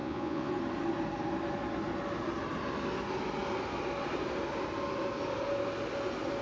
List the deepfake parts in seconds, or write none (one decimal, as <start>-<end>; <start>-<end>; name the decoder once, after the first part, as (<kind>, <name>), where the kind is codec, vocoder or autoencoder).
0.0-0.5 (vocoder, Vocos)